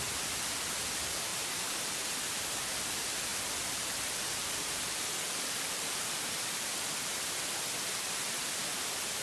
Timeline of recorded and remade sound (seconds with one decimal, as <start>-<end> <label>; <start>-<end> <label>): 0.0-1.3 remade; 1.3-1.8 recorded; 1.8-9.2 remade